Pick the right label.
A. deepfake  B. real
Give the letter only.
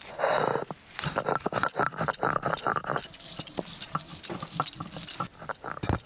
B